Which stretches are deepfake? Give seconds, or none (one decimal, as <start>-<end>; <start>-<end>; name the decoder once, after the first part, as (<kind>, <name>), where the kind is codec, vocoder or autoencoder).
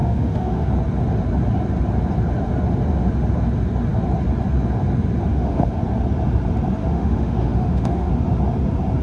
0.0-0.7 (autoencoder, DAC-VAE); 5.3-5.8; 6.8-8.1